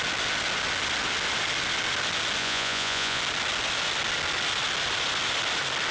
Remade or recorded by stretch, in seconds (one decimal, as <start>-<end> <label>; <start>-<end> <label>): 0.0-2.4 recorded; 2.4-3.2 remade; 3.2-5.9 recorded